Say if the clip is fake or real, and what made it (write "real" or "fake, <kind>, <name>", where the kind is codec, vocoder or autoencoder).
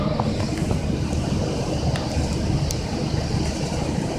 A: real